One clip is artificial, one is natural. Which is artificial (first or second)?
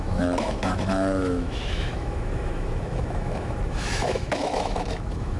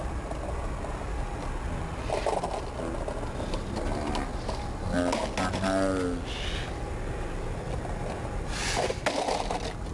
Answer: first